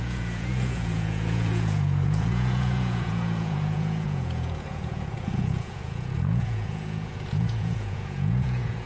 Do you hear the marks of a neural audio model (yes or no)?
yes